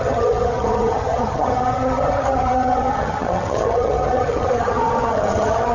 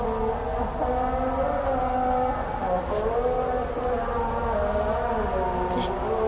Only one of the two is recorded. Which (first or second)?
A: second